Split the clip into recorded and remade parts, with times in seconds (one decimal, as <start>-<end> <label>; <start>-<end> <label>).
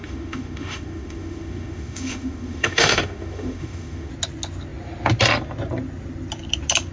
0.0-4.1 remade; 4.1-6.9 recorded